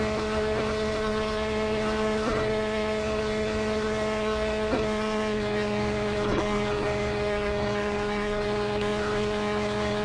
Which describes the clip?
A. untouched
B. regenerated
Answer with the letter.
B